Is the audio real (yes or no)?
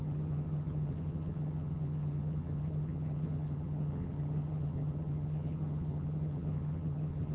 no